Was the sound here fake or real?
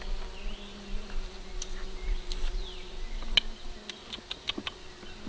real